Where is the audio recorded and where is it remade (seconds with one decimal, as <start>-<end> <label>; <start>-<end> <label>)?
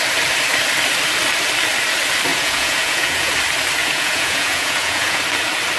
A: 0.0-2.3 recorded; 2.3-3.3 remade; 3.3-3.8 recorded; 3.8-5.2 remade; 5.2-5.8 recorded